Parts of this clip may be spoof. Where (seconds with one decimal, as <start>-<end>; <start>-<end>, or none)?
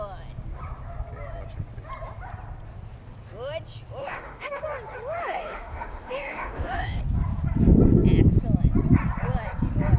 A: 4.0-4.6; 5.2-7.0